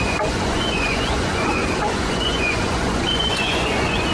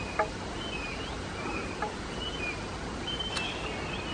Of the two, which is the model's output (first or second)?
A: first